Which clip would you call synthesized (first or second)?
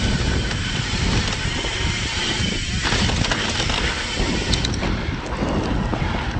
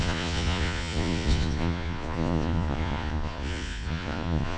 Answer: second